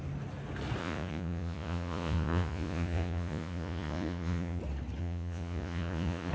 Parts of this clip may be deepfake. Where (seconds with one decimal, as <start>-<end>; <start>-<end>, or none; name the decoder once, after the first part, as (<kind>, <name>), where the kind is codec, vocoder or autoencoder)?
0.8-4.6 (vocoder, Vocos); 5.0-6.3